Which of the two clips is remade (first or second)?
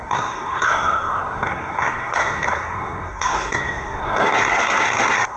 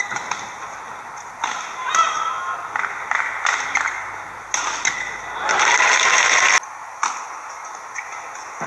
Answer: first